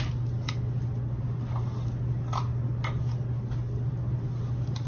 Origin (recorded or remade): recorded